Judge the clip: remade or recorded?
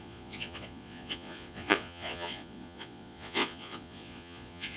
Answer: remade